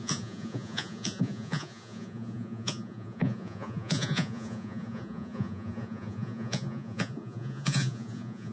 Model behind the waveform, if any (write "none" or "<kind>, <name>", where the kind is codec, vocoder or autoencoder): vocoder, Vocos